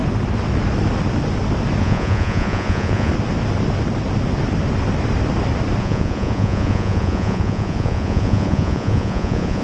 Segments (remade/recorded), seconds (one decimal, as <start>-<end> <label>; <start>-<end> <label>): 0.0-1.8 recorded; 1.8-3.1 remade; 3.1-5.8 recorded; 5.8-9.6 remade